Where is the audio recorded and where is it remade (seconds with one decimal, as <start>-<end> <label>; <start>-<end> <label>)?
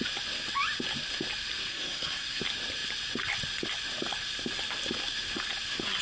0.0-1.7 recorded; 1.7-2.4 remade; 2.4-6.0 recorded